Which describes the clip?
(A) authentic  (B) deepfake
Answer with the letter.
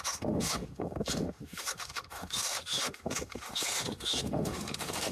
B